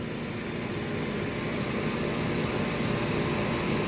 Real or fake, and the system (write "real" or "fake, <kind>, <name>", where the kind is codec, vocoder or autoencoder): real